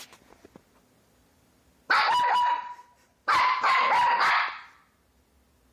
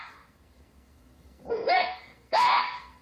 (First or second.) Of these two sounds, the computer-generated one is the second